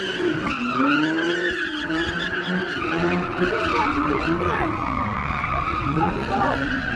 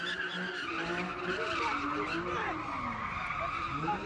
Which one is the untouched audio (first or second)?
second